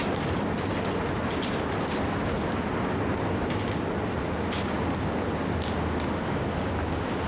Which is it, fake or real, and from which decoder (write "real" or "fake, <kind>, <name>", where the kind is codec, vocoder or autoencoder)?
real